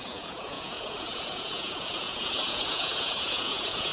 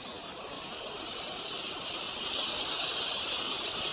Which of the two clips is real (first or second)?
second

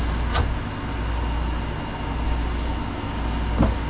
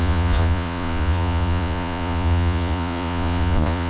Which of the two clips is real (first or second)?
first